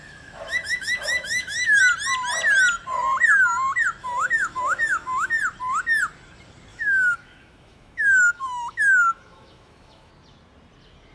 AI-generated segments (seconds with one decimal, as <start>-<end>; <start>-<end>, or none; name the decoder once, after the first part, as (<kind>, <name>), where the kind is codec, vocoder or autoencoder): 0.0-1.8 (autoencoder, DAC-VAE); 4.0-5.3; 6.7-10.1